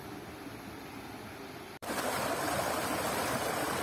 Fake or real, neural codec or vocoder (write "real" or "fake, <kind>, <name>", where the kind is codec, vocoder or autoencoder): fake, vocoder, BigVGAN v2